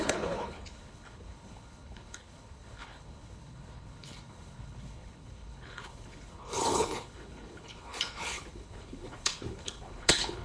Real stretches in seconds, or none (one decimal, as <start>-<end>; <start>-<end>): none